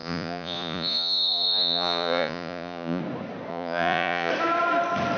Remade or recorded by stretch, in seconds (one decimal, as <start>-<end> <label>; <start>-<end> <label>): 0.0-3.0 remade; 3.0-3.5 recorded; 3.5-4.3 remade; 4.3-5.2 recorded

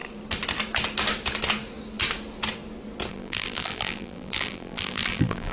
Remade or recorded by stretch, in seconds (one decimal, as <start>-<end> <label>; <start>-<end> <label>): 0.0-3.1 recorded; 3.1-5.5 remade

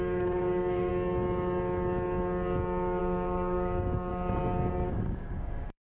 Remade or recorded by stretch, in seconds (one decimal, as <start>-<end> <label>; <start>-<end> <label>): 0.0-0.9 remade; 0.9-3.0 recorded; 3.0-4.1 remade; 4.1-4.9 recorded; 4.9-5.8 remade

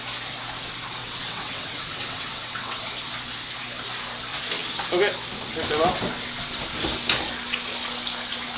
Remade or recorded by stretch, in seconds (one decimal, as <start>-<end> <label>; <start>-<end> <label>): 0.0-1.0 recorded; 1.0-2.9 remade; 2.9-8.6 recorded

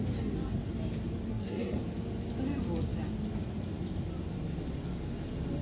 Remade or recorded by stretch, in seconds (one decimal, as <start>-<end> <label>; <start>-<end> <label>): 0.0-1.3 recorded; 1.3-1.8 remade; 1.8-5.6 recorded

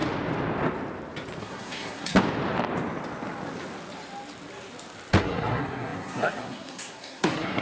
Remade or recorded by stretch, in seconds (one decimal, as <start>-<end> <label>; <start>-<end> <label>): 0.0-1.4 recorded; 1.4-2.1 remade; 2.1-5.2 recorded; 5.2-7.6 remade

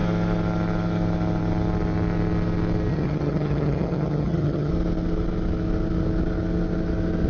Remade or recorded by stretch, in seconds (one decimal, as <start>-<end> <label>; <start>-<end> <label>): 0.0-2.9 recorded; 2.9-4.7 remade; 4.7-7.3 recorded

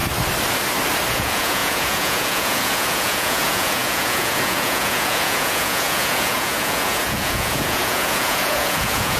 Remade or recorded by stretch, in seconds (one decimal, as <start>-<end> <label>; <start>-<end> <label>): 0.0-1.1 recorded; 1.1-9.2 remade